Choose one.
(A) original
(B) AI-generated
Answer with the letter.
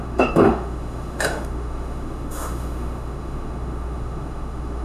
B